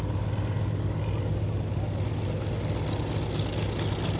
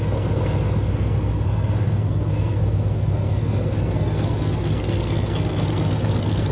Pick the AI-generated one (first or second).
second